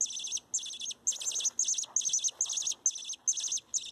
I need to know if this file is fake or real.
real